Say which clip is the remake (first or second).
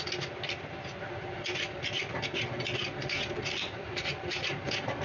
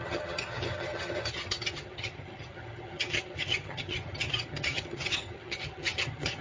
second